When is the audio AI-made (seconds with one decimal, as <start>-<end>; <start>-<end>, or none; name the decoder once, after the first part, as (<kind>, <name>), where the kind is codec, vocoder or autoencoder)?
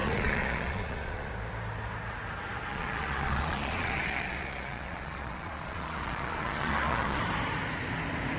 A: 0.0-1.3 (vocoder, Vocos); 2.7-7.2